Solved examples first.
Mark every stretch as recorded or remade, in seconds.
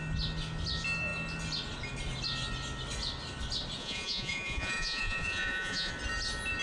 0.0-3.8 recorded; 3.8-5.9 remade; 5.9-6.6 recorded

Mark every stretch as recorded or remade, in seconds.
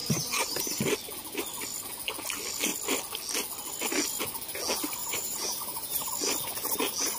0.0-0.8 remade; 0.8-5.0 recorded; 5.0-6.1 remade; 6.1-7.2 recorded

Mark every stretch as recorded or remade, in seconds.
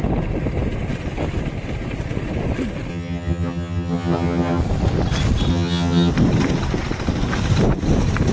0.0-2.9 recorded; 2.9-4.6 remade; 4.6-5.5 recorded; 5.5-6.1 remade; 6.1-8.3 recorded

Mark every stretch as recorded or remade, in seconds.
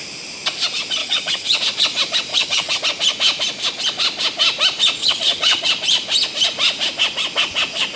0.0-1.0 recorded; 1.0-1.6 remade; 1.6-2.3 recorded; 2.3-2.8 remade; 2.8-5.0 recorded; 5.0-5.7 remade; 5.7-8.0 recorded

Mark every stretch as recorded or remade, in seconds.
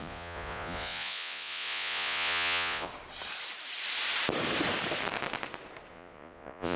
0.0-2.9 remade; 2.9-5.9 recorded; 5.9-6.8 remade